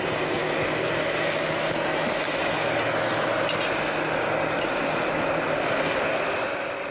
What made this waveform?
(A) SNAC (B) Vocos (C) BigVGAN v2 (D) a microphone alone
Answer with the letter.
D